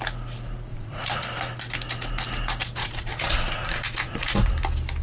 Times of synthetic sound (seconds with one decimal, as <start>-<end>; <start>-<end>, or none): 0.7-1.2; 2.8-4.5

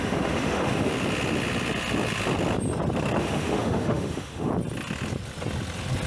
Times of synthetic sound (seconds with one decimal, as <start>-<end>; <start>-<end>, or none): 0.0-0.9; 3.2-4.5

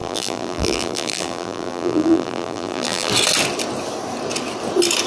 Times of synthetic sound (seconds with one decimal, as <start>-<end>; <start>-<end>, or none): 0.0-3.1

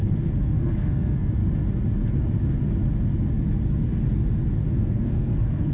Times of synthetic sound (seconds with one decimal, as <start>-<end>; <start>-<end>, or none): 0.0-1.4; 4.8-5.7

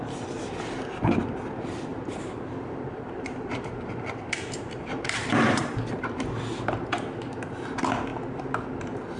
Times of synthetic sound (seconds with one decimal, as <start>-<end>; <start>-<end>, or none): 1.9-5.9

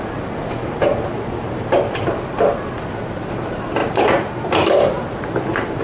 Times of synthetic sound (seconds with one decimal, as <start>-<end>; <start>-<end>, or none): 3.8-4.5

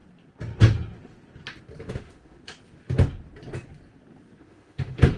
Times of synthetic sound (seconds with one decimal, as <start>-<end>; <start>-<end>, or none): 1.9-2.4; 4.4-5.2

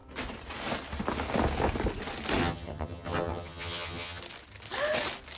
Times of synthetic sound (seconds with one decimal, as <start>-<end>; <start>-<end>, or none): 2.4-4.2